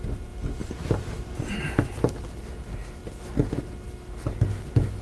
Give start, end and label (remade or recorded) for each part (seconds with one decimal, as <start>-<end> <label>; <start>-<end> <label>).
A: 0.0-0.6 recorded; 0.6-1.5 remade; 1.5-5.0 recorded